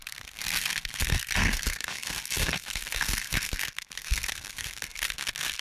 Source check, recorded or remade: remade